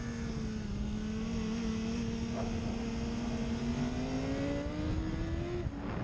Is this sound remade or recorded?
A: recorded